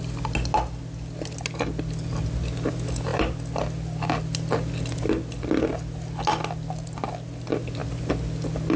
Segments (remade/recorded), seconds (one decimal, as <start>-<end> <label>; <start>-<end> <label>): 0.0-8.8 recorded